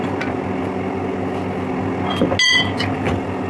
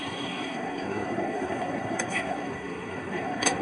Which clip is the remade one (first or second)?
second